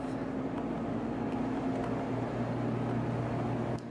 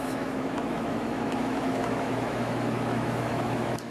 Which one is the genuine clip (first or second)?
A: first